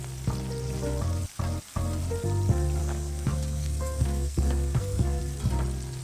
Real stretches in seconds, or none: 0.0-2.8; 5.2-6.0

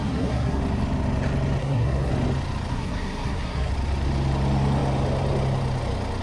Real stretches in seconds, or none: 0.6-1.6; 2.1-2.7; 3.7-6.2

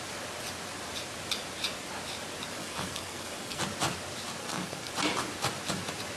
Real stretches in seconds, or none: 0.0-2.6; 3.6-4.4; 4.9-6.2

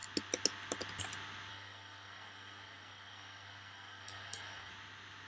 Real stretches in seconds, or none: 0.0-1.5; 4.7-5.3

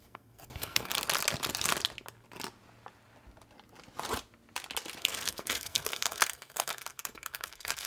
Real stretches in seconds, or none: 0.9-5.0

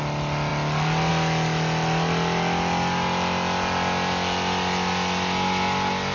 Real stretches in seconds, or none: 0.0-6.1